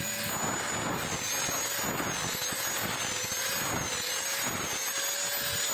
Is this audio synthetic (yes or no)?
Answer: no